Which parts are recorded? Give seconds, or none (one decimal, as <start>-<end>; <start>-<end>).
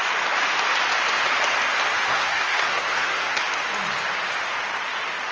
0.0-2.0; 3.4-5.3